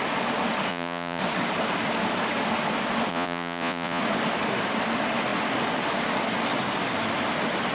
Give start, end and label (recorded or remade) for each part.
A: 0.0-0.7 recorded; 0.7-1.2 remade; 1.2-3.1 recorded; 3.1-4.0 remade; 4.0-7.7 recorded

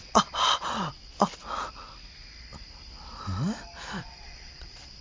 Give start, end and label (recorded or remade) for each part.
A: 0.0-1.0 remade; 1.0-4.0 recorded; 4.0-5.0 remade

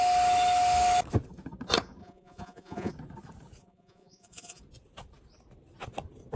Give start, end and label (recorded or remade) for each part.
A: 0.0-2.0 recorded; 2.0-2.9 remade; 2.9-3.6 recorded; 3.6-4.6 remade; 4.6-6.4 recorded

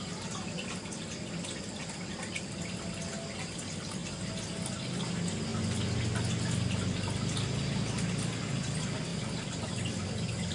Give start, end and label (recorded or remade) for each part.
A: 0.0-10.5 recorded

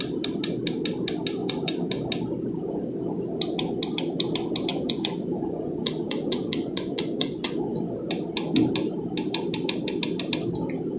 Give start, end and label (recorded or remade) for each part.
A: 0.0-1.4 recorded; 1.4-1.9 remade; 1.9-4.7 recorded; 4.7-7.8 remade; 7.8-11.0 recorded